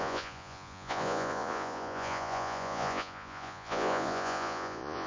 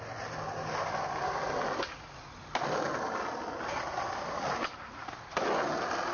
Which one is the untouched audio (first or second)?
second